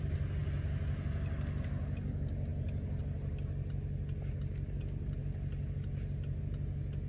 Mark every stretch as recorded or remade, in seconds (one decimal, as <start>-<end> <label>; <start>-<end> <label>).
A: 0.0-7.1 recorded